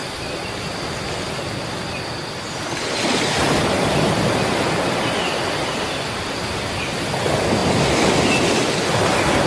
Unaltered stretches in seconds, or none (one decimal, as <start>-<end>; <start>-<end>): 0.0-9.5